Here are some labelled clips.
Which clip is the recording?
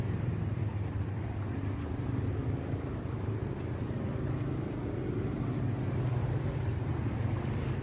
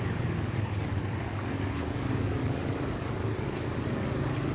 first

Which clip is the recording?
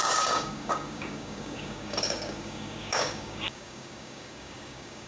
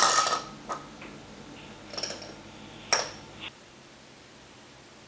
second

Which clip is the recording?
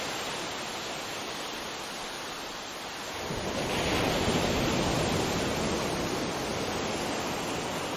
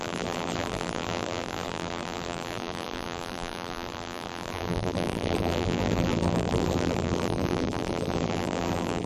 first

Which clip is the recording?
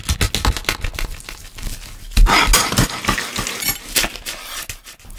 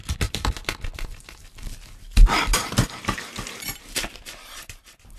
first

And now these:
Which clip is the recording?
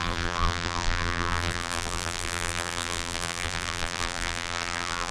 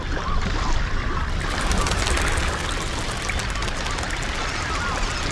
second